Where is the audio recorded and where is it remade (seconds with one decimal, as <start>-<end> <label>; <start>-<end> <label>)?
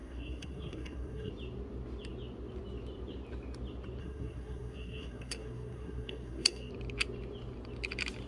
0.0-1.3 remade; 1.3-4.0 recorded; 4.0-6.7 remade; 6.7-8.3 recorded